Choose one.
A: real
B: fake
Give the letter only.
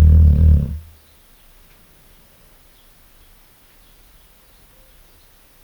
A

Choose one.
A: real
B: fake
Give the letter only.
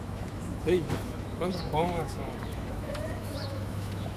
B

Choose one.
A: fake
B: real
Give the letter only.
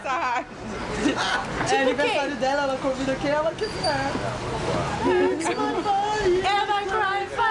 B